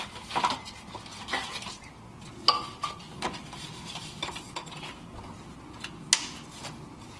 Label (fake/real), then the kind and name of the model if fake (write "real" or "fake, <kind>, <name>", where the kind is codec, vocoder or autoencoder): real